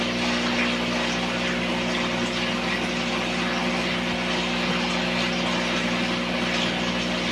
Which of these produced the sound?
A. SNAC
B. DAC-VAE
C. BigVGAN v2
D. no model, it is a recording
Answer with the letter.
D